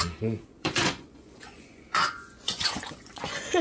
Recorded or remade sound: remade